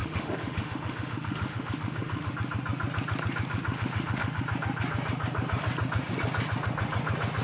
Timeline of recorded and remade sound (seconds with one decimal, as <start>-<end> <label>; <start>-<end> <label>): 0.0-2.3 remade; 2.3-3.5 recorded; 3.5-4.4 remade; 4.4-7.4 recorded